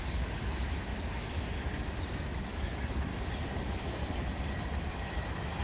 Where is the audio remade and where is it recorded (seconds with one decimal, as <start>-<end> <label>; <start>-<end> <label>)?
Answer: 0.0-3.1 remade; 3.1-3.6 recorded; 3.6-4.0 remade; 4.0-4.9 recorded; 4.9-5.6 remade